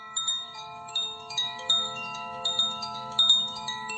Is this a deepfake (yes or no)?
yes